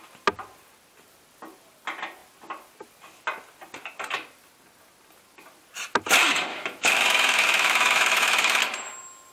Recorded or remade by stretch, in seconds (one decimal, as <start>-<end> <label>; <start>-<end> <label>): 0.0-6.5 recorded; 6.5-8.6 remade; 8.6-9.3 recorded